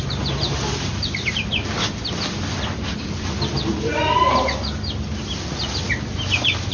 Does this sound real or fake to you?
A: real